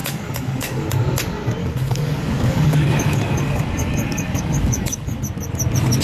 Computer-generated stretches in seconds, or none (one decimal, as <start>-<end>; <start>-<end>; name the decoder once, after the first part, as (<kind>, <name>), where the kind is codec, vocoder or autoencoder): 0.0-0.8 (codec, DAC); 1.6-5.2